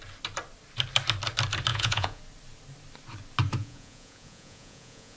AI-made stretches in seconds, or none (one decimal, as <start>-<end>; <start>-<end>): 1.7-2.2; 3.6-5.2